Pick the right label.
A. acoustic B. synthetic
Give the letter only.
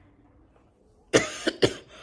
A